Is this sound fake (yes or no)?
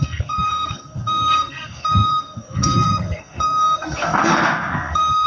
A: yes